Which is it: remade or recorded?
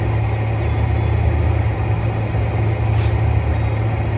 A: recorded